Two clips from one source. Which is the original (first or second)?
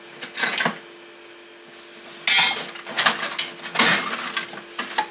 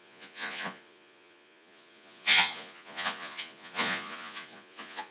first